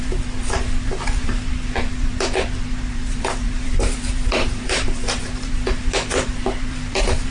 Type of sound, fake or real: fake